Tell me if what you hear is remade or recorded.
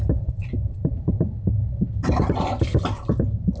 recorded